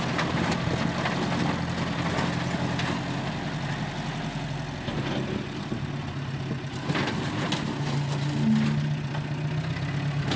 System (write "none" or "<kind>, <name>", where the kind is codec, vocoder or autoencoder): none